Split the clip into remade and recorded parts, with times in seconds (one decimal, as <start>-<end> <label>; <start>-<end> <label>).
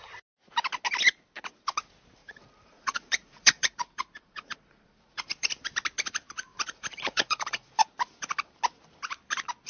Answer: 0.0-2.2 recorded; 2.2-5.3 remade; 5.3-6.5 recorded; 6.5-7.7 remade; 7.7-9.7 recorded